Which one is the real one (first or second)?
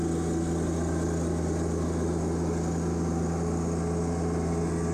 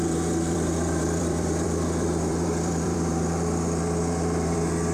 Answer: first